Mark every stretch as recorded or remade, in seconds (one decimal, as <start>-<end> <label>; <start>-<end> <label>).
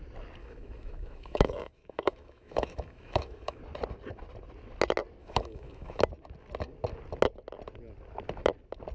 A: 0.0-0.4 recorded; 0.4-3.6 remade; 3.6-5.2 recorded; 5.2-6.0 remade; 6.0-8.9 recorded